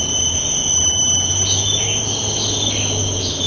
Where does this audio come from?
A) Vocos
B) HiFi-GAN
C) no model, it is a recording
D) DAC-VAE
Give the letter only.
D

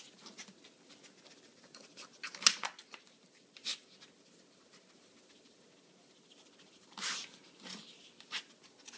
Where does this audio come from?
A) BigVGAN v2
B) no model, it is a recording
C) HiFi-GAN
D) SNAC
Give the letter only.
B